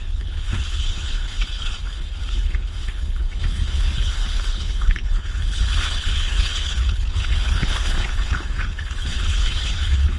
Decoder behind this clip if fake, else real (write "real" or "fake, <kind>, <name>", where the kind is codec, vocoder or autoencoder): fake, codec, HILCodec